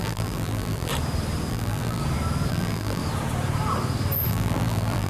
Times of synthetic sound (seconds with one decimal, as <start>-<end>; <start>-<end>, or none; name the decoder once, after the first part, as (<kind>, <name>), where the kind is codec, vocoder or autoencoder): 0.0-0.9 (vocoder, BigVGAN v2); 1.5-2.0; 2.5-3.0; 4.3-5.1